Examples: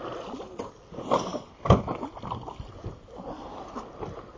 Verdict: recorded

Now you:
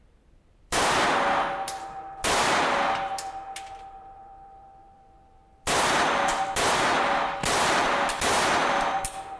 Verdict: remade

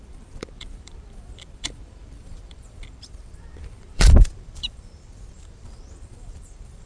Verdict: remade